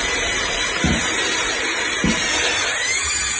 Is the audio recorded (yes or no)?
no